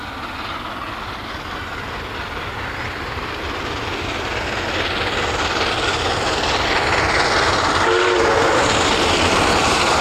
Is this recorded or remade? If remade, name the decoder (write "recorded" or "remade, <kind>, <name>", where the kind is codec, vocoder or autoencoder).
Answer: recorded